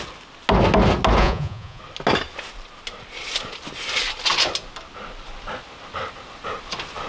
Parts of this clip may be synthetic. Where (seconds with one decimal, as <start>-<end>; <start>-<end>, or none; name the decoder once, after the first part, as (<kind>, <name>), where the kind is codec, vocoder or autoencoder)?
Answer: 1.2-1.8 (vocoder, Vocos)